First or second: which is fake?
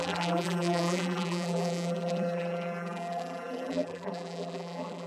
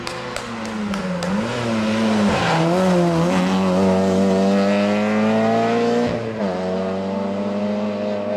first